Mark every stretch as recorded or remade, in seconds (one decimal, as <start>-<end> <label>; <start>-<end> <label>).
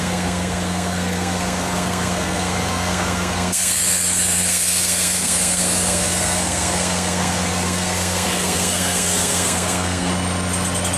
0.0-10.1 remade; 10.1-11.0 recorded